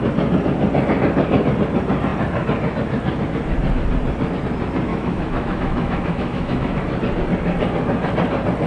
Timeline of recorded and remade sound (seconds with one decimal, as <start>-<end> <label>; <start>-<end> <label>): 0.0-4.9 recorded; 4.9-6.8 remade; 6.8-8.7 recorded